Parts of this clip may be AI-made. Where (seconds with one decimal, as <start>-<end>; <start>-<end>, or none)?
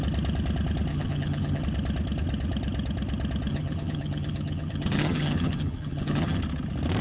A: 0.9-1.6; 3.5-6.4